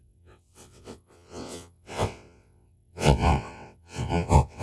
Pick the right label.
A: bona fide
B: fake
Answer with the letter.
B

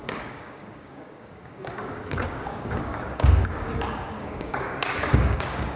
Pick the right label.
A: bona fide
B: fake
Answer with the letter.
B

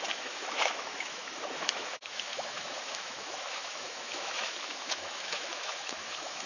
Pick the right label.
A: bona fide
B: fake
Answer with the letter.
B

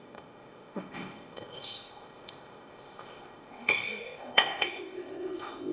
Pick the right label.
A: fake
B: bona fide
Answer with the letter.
A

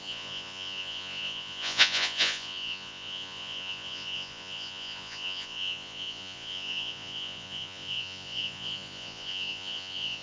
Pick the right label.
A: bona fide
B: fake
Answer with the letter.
B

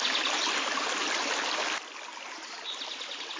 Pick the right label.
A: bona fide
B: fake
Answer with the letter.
A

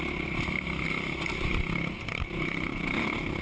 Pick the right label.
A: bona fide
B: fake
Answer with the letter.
A